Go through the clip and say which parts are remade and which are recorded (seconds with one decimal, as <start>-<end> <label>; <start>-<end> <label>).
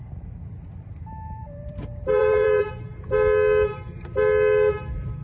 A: 0.0-1.0 recorded; 1.0-2.7 remade; 2.7-5.2 recorded